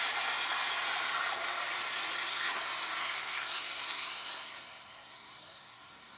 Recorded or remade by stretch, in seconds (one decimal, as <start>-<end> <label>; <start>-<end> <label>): 0.0-2.1 recorded; 2.1-2.6 remade; 2.6-3.0 recorded; 3.0-6.2 remade